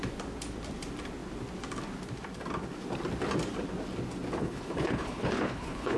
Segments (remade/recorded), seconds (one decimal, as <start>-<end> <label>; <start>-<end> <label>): 0.0-4.4 recorded; 4.4-6.0 remade